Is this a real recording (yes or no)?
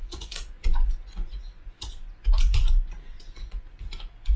no